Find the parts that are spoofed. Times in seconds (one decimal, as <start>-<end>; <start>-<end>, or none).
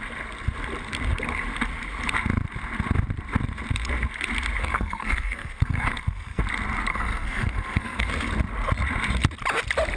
4.6-6.4; 6.9-8.1